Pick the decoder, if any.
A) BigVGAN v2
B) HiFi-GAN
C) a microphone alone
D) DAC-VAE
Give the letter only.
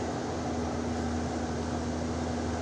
C